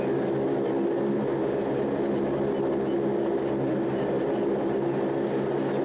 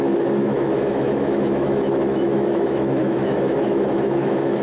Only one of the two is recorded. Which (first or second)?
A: first